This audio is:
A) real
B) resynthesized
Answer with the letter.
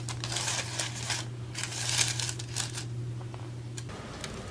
A